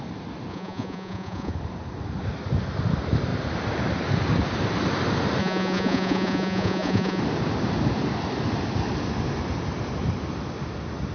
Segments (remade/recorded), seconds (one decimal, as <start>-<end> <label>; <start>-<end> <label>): 0.0-0.5 recorded; 0.5-1.5 remade; 1.5-5.4 recorded; 5.4-7.2 remade; 7.2-11.1 recorded